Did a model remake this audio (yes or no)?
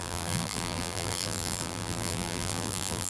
yes